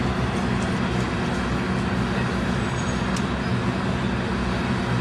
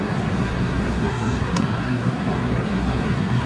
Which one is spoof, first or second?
second